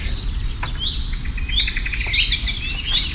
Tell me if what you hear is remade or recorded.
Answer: recorded